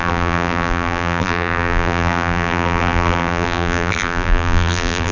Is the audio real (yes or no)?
no